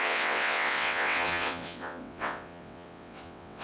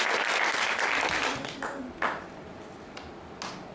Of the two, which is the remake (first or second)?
first